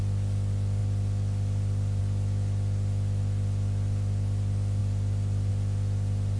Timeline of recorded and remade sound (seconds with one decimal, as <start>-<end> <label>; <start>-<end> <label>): 0.0-6.4 recorded